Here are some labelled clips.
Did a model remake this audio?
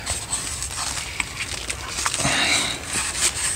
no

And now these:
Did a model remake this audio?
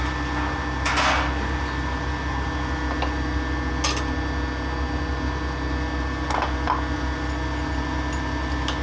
no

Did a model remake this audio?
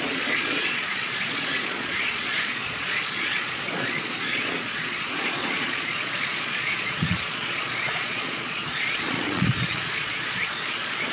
yes